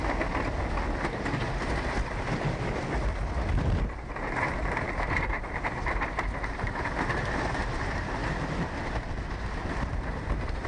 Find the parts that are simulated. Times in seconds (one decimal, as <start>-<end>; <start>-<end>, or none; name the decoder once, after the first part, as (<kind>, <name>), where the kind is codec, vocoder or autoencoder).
3.5-8.2 (vocoder, BigVGAN v2); 9.9-10.7